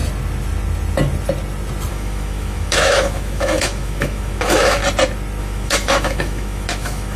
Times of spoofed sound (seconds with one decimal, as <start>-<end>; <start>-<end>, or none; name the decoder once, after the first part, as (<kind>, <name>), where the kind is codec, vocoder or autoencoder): 1.9-4.8 (autoencoder, DAC-VAE); 5.4-7.2